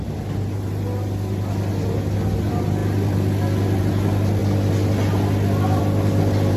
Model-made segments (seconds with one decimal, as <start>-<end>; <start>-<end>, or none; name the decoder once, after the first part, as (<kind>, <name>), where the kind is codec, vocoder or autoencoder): none